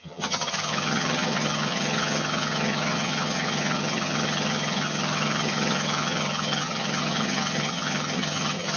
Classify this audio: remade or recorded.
remade